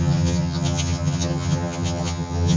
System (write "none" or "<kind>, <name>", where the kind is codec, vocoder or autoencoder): vocoder, HiFi-GAN